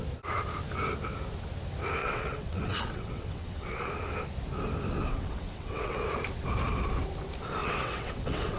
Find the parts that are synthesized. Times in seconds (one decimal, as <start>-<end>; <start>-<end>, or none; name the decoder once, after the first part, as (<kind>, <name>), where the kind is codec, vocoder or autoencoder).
2.0-3.9 (vocoder, WaveNeXt); 5.1-6.0; 7.6-8.6